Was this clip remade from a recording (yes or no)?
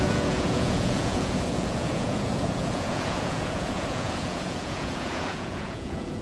yes